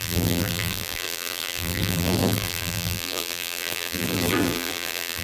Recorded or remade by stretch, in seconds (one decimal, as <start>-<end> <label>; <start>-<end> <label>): 0.0-5.2 remade

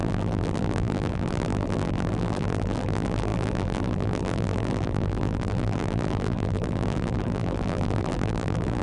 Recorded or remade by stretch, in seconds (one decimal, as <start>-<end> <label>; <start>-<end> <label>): 0.0-8.8 remade

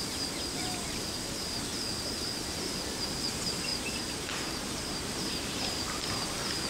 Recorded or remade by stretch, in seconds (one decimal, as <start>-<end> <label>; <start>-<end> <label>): 0.0-3.7 recorded; 3.7-5.3 remade; 5.3-6.7 recorded